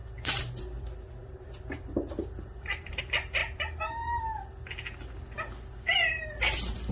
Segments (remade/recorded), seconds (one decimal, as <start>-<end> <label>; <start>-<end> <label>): 0.0-3.0 remade; 3.0-3.4 recorded; 3.4-4.2 remade; 4.2-6.9 recorded